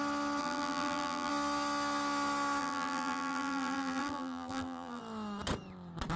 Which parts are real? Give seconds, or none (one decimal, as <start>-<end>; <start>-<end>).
0.0-0.4; 1.3-2.6; 5.0-6.2